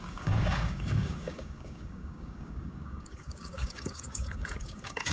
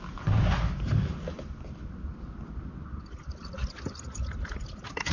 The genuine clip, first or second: second